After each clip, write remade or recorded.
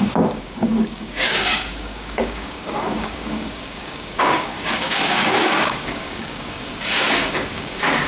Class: remade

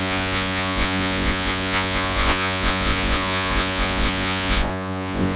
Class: remade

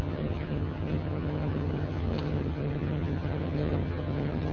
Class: remade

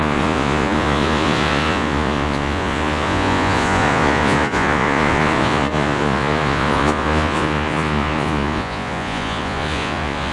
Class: remade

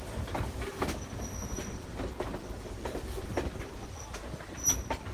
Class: recorded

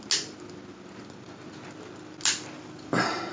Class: recorded